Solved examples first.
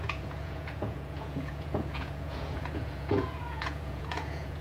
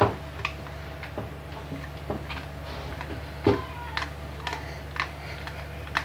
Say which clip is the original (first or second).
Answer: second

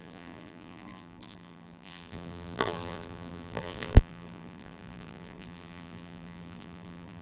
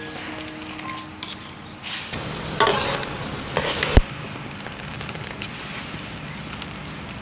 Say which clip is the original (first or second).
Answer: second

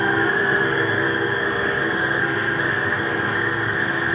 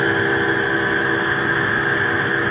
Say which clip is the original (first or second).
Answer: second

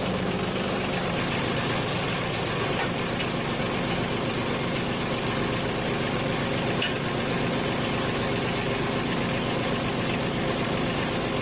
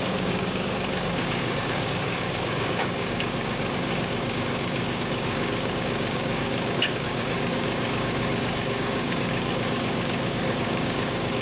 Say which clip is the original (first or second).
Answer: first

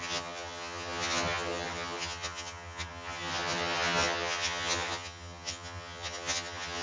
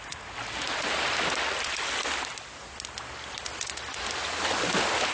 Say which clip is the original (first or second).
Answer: second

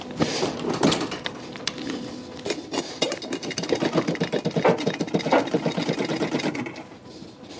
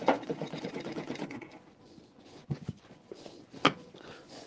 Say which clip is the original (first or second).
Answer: first